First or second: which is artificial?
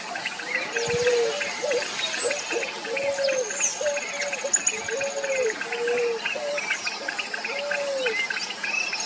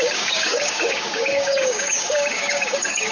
second